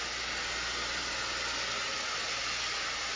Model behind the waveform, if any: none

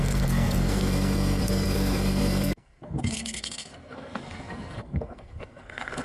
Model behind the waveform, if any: codec, SNAC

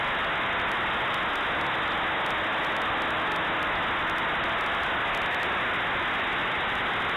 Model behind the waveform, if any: none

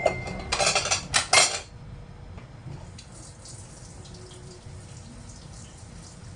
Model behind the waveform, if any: none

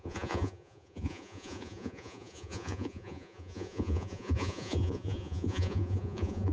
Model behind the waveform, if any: vocoder, Vocos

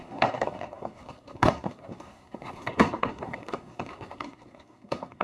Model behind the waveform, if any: codec, SNAC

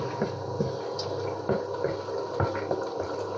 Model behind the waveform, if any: none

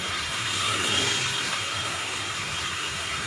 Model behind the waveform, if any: codec, SNAC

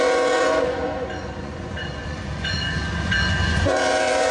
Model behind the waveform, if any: vocoder, Vocos